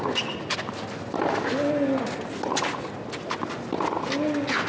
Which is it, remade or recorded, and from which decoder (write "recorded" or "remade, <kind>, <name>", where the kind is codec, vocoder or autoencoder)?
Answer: recorded